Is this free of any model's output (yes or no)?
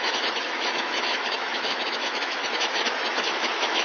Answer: no